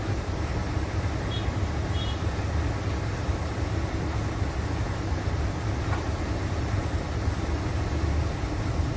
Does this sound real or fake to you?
real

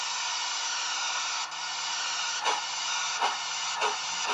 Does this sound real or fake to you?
real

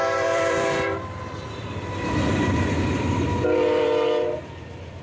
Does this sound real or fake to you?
fake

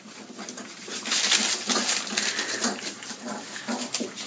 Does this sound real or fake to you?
real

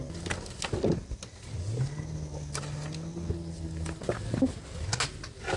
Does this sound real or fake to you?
real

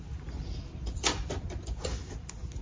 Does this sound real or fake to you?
real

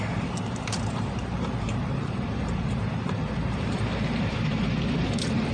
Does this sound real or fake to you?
fake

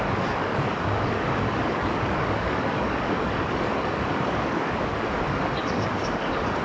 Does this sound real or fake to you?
fake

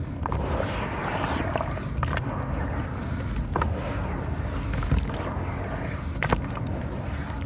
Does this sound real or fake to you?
real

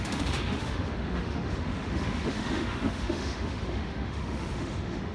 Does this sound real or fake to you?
fake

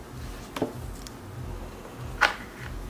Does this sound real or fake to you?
real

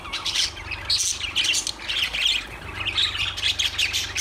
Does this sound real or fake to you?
real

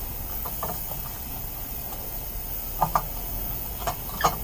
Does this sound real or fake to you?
real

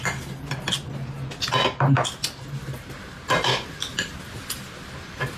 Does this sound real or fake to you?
real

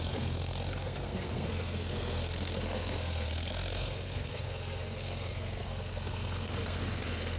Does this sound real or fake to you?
fake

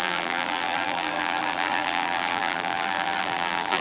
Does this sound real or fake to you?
fake